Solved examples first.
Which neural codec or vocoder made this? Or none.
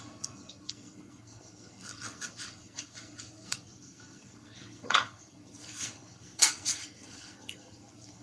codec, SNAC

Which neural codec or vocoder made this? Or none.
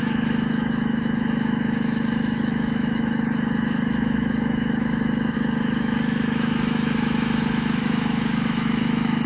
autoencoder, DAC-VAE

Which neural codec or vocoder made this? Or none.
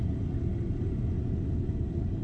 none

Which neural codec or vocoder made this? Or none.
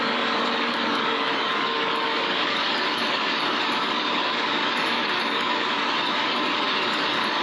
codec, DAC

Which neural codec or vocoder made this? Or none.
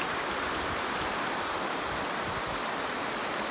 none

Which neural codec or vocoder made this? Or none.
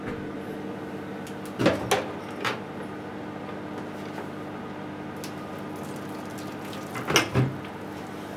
none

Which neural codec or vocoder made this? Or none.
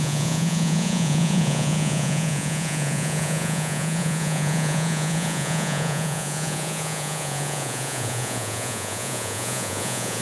vocoder, Vocos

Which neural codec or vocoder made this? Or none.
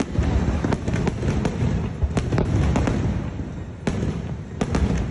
none